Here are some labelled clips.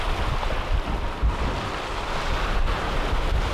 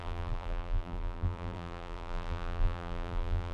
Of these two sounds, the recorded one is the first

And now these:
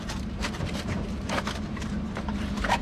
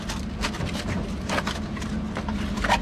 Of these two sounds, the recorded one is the second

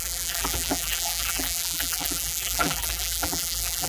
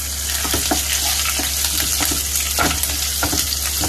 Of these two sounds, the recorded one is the second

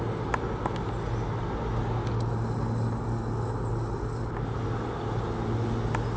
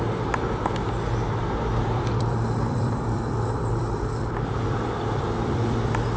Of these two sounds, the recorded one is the first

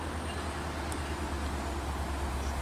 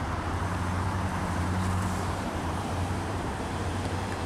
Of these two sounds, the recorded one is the first